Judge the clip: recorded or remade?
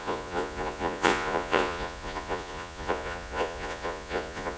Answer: remade